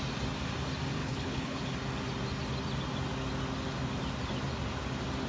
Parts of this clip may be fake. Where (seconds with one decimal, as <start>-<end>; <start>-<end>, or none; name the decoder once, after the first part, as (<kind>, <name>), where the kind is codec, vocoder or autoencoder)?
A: 1.0-1.6 (codec, HILCodec)